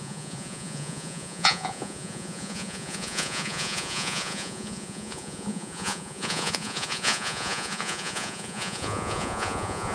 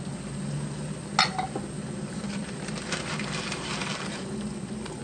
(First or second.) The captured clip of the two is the second